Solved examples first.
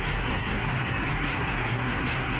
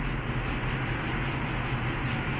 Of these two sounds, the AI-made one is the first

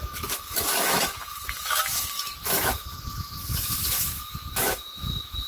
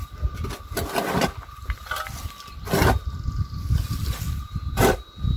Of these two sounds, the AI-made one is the first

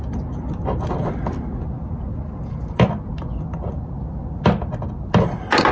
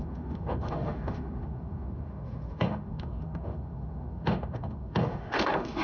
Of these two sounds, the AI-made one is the second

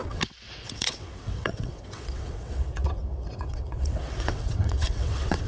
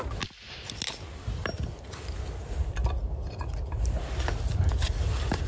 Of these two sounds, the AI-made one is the first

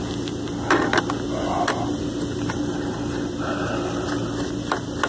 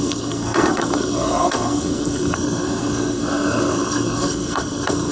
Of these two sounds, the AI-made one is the second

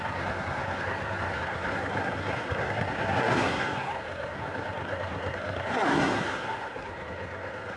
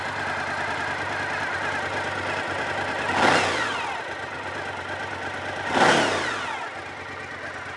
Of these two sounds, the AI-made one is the first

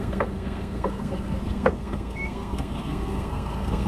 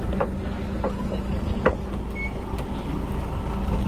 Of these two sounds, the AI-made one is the first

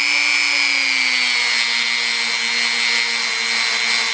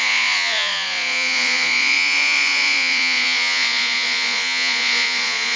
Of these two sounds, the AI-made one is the second